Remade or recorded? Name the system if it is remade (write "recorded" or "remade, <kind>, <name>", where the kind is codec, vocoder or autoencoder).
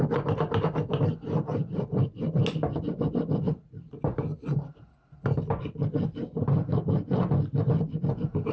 recorded